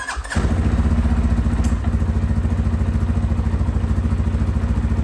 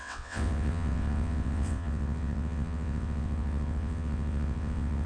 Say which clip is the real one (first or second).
first